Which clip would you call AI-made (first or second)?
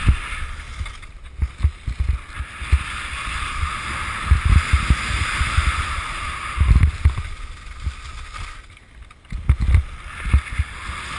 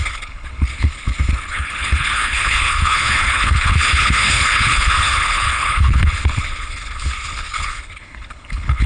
second